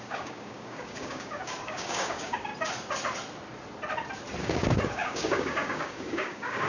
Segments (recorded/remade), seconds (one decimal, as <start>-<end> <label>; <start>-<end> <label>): 0.0-2.5 remade; 2.5-4.4 recorded; 4.4-6.7 remade